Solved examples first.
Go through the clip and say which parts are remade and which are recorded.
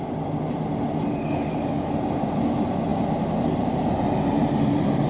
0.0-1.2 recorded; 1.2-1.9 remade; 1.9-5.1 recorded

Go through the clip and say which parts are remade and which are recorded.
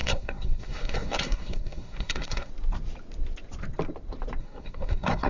0.0-2.5 remade; 2.5-4.4 recorded; 4.4-5.3 remade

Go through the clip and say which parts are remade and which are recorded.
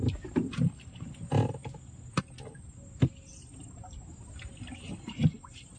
0.0-5.8 recorded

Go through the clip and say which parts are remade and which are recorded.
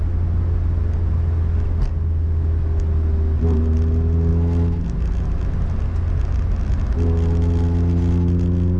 0.0-8.8 recorded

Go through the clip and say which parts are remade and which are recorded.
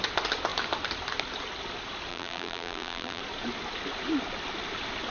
0.0-2.1 recorded; 2.1-3.2 remade; 3.2-5.1 recorded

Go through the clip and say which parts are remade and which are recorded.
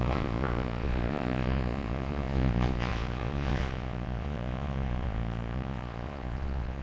0.0-6.8 remade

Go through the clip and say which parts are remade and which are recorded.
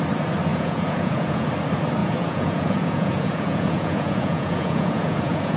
0.0-0.5 recorded; 0.5-1.5 remade; 1.5-2.0 recorded; 2.0-5.6 remade